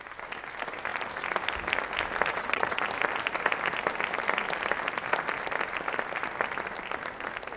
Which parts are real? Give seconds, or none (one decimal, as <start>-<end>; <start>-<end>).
0.0-2.3; 2.8-7.6